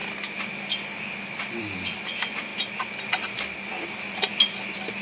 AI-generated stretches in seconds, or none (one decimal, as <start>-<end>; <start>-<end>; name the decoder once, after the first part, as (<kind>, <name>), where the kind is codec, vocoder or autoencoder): none